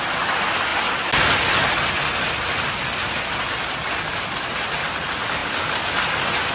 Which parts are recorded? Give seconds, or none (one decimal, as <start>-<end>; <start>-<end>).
0.0-3.8; 4.5-5.4; 6.1-6.5